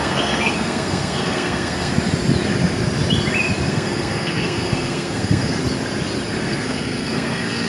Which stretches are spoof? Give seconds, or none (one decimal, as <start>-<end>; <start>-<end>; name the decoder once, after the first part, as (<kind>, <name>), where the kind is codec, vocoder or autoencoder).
0.0-1.9 (codec, SNAC); 3.7-5.6; 6.4-7.7